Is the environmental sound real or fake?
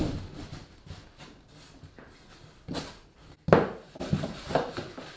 real